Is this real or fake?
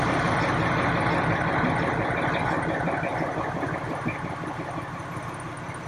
real